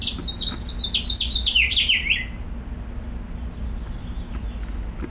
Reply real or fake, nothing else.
real